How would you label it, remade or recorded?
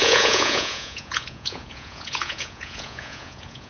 remade